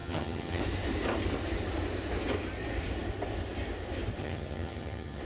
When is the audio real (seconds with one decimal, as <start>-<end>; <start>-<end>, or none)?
0.6-4.2